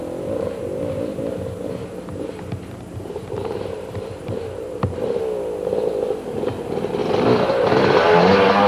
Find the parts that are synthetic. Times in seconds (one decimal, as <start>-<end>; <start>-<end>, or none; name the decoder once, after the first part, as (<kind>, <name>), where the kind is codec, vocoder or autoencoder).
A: 1.8-5.2 (vocoder, BigVGAN v2)